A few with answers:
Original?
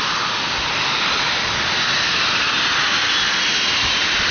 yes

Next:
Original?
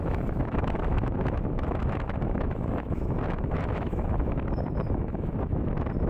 no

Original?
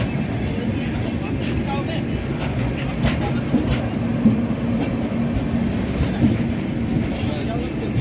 yes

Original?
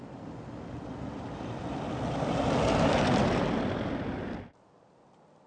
yes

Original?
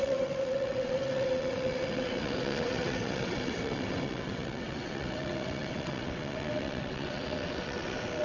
no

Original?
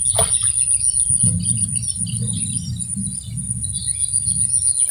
yes